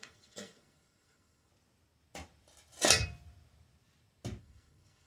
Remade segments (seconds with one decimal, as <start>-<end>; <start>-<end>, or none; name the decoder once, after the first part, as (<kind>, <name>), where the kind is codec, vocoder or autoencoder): 0.0-1.5 (codec, SNAC); 4.4-5.1